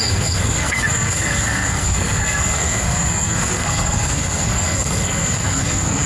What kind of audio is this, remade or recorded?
remade